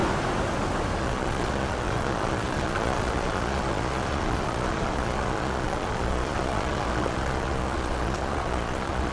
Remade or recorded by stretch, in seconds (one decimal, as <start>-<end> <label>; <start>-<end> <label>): 0.0-1.0 recorded; 1.0-9.1 remade